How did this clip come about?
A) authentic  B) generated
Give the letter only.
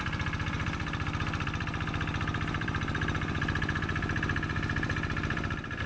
B